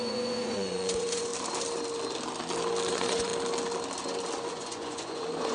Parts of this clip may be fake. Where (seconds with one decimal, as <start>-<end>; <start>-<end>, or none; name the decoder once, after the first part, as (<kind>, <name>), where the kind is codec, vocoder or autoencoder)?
0.0-1.3 (vocoder, Vocos); 2.9-3.3; 4.5-5.5